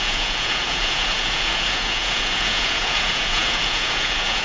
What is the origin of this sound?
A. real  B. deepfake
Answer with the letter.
B